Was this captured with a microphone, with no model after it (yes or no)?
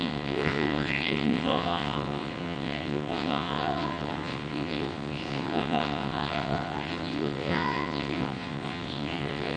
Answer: no